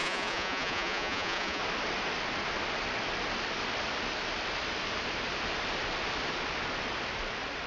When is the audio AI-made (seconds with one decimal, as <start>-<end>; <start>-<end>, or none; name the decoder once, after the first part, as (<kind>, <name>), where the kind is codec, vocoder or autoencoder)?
0.0-1.6 (vocoder, Vocos)